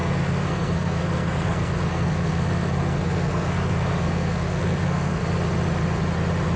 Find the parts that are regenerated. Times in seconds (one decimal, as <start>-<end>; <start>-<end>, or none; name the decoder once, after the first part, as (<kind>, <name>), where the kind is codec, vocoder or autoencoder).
0.0-5.2 (codec, SNAC)

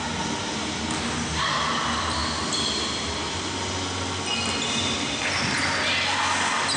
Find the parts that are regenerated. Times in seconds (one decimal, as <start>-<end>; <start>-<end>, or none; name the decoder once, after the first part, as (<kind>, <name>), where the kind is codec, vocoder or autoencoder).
none

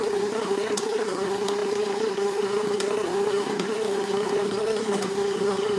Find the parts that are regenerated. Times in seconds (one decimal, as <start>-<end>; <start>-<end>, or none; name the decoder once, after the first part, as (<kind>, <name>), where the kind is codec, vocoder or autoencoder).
0.0-5.8 (codec, SNAC)